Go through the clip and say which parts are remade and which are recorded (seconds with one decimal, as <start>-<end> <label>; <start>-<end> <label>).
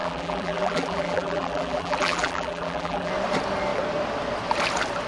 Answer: 0.0-3.1 remade; 3.1-5.1 recorded